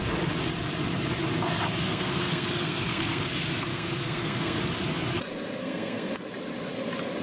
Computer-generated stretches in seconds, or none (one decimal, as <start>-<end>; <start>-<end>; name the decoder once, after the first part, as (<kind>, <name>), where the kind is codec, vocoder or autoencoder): 1.9-3.3 (codec, SNAC); 3.7-4.6; 5.6-6.1